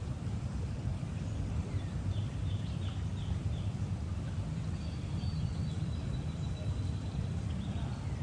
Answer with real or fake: fake